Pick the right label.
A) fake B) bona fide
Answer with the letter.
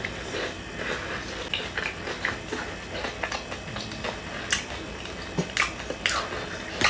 B